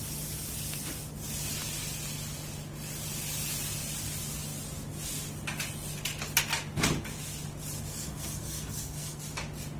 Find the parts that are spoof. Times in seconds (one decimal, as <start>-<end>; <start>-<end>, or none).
7.9-9.2